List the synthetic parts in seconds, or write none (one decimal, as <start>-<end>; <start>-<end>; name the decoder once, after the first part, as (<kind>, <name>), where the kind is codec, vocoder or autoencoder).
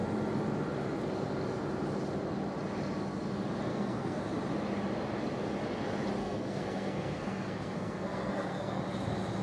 3.7-4.2 (codec, SNAC); 6.2-8.8